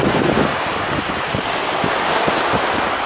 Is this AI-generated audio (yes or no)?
no